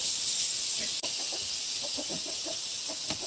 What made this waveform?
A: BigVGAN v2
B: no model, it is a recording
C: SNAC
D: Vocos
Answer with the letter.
D